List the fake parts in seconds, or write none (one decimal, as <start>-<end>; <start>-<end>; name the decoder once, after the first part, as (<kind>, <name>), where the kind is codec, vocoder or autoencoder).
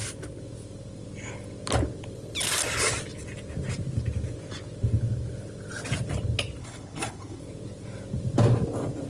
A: 6.6-7.4 (codec, HILCodec)